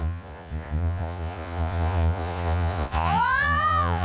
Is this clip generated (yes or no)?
yes